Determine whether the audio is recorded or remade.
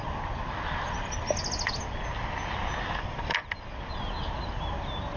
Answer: recorded